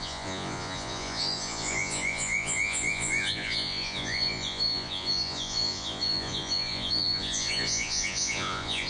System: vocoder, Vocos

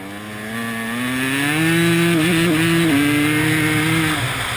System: none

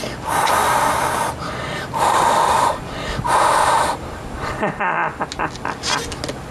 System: none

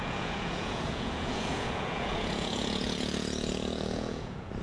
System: vocoder, Vocos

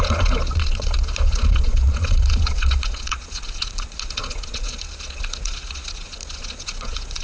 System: vocoder, Vocos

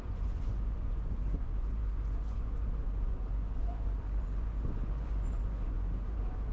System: vocoder, Vocos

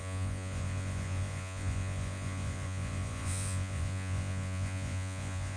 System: vocoder, Vocos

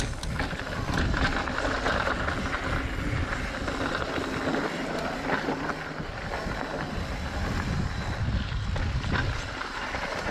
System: none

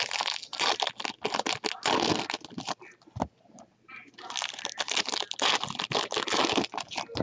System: none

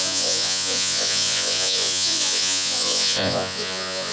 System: vocoder, Vocos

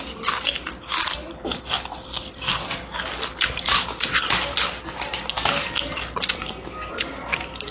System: none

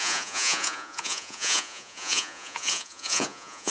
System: vocoder, Vocos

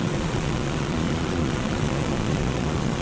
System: vocoder, Vocos